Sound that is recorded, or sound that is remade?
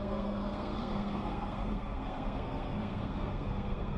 remade